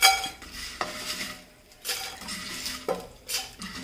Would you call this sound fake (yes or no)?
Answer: no